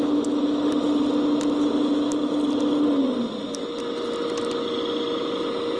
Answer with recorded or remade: recorded